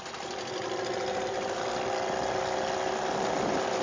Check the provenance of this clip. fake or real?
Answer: real